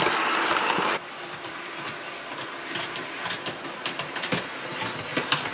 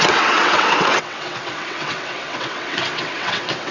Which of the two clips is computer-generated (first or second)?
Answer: second